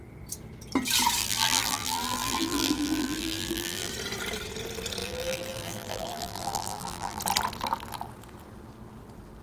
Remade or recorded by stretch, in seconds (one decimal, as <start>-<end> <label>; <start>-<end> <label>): 0.0-1.2 recorded; 1.2-3.9 remade; 3.9-5.0 recorded; 5.0-7.2 remade; 7.2-9.4 recorded